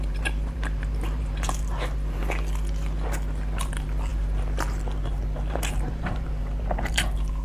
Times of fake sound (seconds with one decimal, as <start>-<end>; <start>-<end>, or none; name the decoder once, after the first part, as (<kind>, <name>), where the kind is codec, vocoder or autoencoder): 0.0-2.2 (vocoder, BigVGAN v2); 3.6-7.4